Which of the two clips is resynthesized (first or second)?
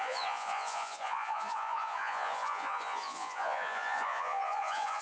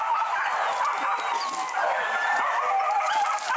first